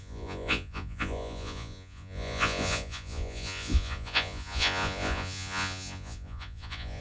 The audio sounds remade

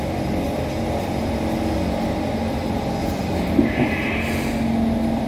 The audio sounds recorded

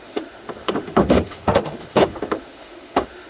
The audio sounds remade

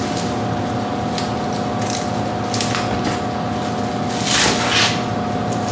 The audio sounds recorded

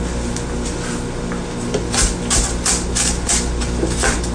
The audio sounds recorded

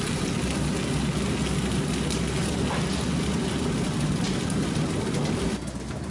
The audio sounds recorded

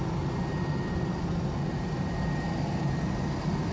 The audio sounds recorded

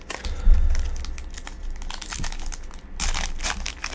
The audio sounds recorded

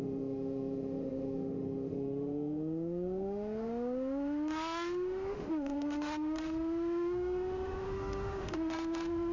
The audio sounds remade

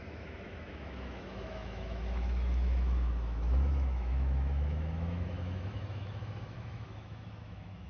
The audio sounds remade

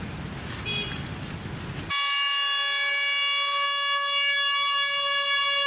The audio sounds recorded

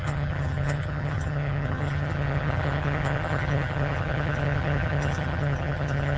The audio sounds remade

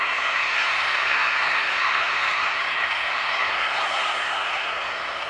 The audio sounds remade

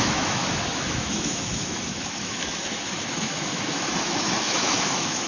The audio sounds remade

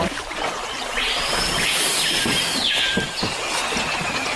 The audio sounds remade